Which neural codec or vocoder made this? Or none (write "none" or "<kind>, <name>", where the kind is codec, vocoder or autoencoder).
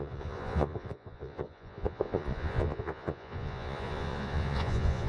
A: vocoder, Vocos